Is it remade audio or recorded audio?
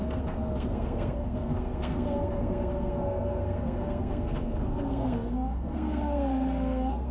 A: remade